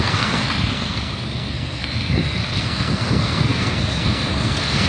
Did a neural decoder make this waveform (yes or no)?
yes